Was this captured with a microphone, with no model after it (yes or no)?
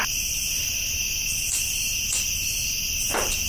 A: no